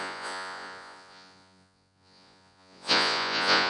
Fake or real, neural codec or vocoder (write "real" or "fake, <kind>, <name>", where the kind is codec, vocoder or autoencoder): fake, vocoder, Vocos